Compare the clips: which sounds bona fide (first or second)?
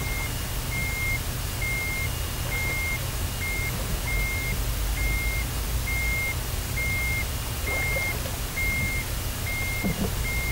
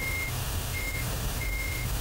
first